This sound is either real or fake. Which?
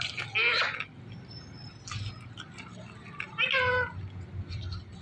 real